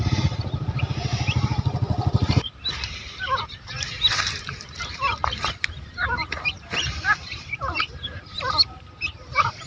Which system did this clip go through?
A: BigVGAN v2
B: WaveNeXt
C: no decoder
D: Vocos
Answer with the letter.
A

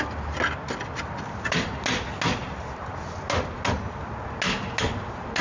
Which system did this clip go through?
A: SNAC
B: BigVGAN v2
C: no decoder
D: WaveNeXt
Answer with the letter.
C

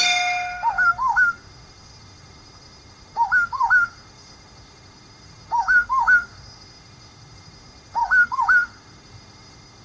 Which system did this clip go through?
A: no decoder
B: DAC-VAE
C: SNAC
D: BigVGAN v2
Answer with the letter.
B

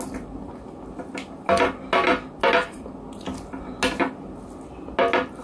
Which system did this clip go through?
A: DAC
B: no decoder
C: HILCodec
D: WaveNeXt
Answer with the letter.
B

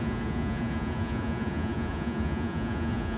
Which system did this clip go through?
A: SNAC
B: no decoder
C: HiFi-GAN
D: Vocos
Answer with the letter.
D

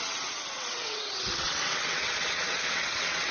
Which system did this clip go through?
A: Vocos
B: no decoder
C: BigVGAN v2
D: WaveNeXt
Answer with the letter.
D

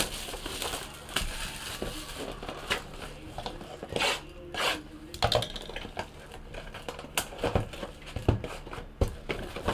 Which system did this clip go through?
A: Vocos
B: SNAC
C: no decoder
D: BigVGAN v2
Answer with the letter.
C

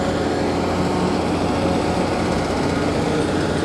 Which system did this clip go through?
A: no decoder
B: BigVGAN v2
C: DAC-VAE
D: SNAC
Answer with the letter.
A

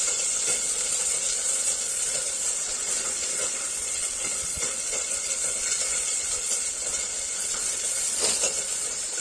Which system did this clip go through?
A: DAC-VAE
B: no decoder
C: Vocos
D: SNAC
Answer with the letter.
C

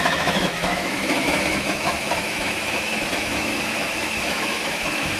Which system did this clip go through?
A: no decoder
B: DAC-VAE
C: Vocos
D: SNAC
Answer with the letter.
B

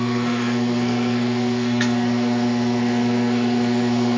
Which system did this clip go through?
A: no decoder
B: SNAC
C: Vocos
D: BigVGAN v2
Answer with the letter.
B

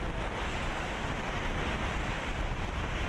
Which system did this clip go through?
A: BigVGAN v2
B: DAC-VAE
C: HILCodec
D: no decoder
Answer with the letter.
D